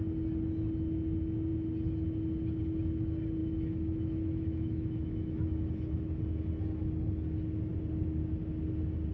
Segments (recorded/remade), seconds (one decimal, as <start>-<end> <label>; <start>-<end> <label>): 0.0-3.4 recorded; 3.4-6.2 remade; 6.2-9.1 recorded